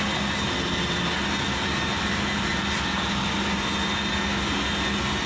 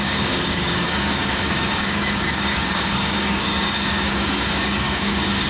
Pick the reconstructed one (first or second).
second